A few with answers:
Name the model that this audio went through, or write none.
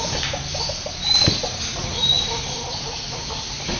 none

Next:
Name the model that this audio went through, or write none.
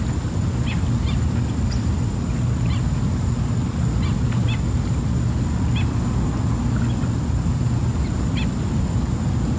none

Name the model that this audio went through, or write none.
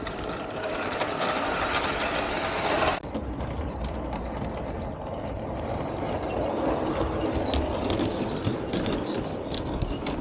none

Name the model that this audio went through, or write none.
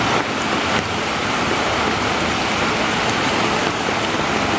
none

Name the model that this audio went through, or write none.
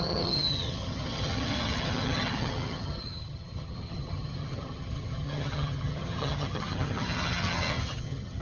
vocoder, HiFi-GAN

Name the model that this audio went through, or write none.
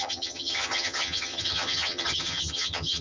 vocoder, HiFi-GAN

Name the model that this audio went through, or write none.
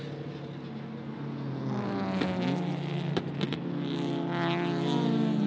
none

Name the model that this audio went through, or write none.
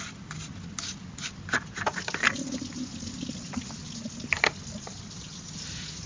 none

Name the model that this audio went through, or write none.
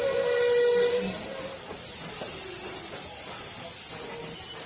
none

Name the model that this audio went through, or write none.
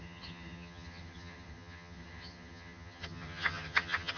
vocoder, HiFi-GAN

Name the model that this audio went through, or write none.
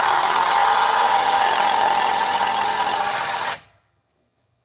vocoder, HiFi-GAN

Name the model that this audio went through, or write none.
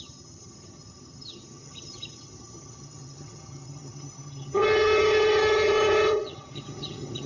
vocoder, HiFi-GAN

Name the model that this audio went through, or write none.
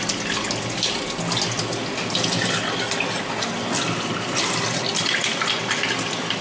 none